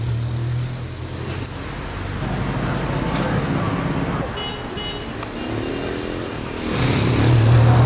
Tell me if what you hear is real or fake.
real